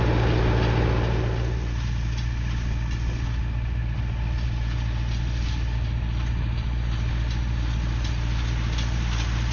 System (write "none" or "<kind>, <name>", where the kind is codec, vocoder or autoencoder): none